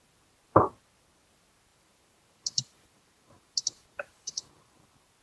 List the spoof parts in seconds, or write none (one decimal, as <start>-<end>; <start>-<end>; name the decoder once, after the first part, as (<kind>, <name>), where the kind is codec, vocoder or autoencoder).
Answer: 1.7-4.8 (vocoder, BigVGAN v2)